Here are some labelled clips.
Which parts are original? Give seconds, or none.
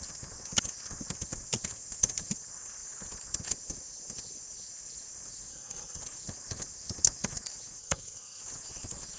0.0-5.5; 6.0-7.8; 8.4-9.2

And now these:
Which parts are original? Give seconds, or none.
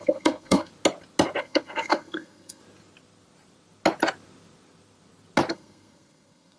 0.7-1.4; 2.6-5.5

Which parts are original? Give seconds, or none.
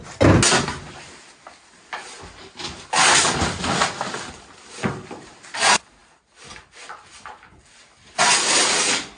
0.0-9.2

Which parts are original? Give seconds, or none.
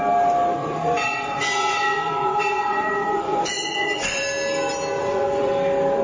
0.0-0.6; 4.2-5.0; 5.5-6.0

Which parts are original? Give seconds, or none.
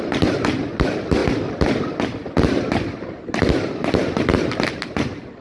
0.0-5.4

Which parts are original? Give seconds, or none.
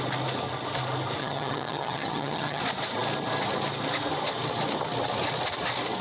0.0-1.2; 2.6-6.0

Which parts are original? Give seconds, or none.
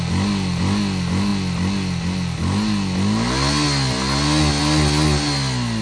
0.0-5.8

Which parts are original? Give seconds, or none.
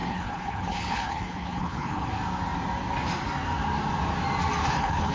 2.1-4.6